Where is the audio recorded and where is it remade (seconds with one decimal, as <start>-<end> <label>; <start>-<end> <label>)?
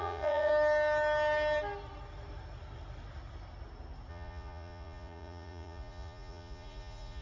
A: 0.0-0.5 remade; 0.5-4.1 recorded; 4.1-7.2 remade